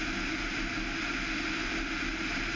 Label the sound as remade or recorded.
recorded